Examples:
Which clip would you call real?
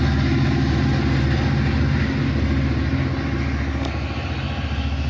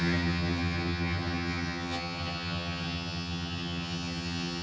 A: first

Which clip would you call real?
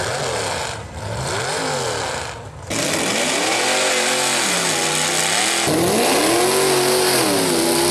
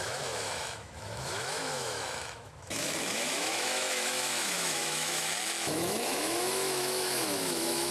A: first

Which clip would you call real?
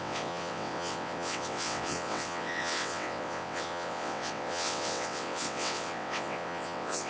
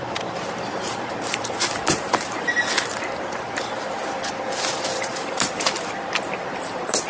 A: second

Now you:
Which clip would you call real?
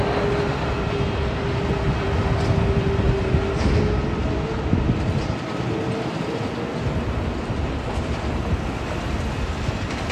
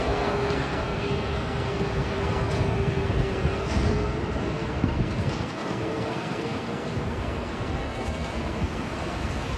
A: first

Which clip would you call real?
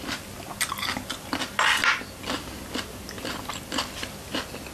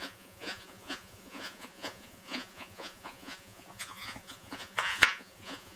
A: first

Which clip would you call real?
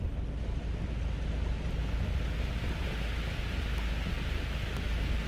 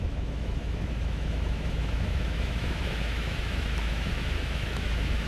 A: first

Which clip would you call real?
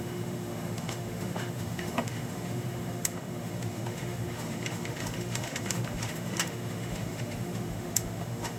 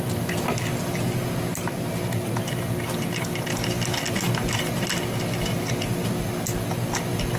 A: second